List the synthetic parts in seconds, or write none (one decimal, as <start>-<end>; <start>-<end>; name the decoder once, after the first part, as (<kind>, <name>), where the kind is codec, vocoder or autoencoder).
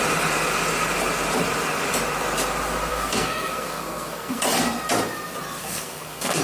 2.9-4.4 (codec, SNAC); 5.6-6.4